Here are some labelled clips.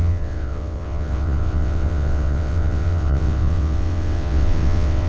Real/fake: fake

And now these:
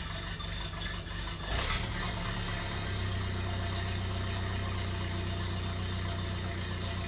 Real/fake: real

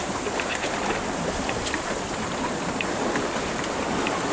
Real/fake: real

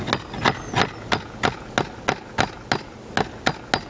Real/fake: real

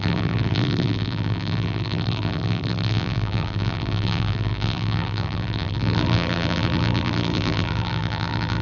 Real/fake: fake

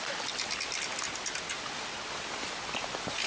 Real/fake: real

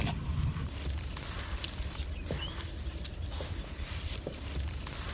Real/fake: fake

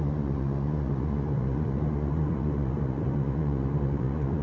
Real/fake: fake